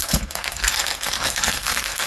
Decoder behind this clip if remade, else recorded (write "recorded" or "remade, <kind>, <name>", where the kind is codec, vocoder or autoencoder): remade, codec, SNAC